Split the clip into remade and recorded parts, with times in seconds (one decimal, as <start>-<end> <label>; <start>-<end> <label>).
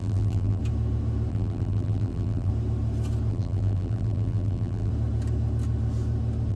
0.0-0.6 remade; 0.6-1.3 recorded; 1.3-2.5 remade; 2.5-3.3 recorded; 3.3-4.9 remade; 4.9-6.5 recorded